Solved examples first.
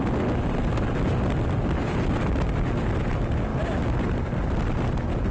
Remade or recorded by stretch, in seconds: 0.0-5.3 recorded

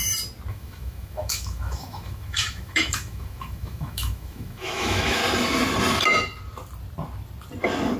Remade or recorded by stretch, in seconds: 0.0-0.5 recorded; 0.5-5.2 remade; 5.2-8.0 recorded

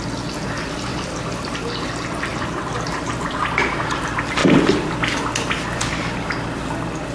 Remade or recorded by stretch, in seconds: 0.0-0.9 recorded; 0.9-1.9 remade; 1.9-2.3 recorded; 2.3-3.1 remade; 3.1-7.1 recorded

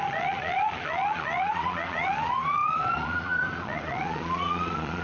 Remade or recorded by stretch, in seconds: 0.0-5.0 remade